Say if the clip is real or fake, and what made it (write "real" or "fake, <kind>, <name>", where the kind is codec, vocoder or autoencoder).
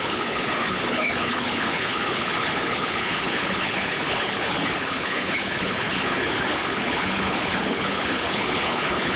fake, codec, HILCodec